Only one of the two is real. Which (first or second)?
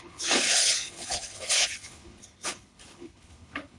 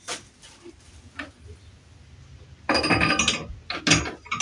second